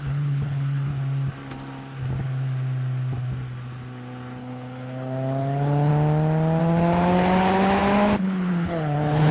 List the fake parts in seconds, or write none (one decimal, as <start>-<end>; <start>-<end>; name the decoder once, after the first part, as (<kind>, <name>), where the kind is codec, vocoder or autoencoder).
0.0-0.9 (codec, HILCodec); 4.4-5.9; 6.6-9.3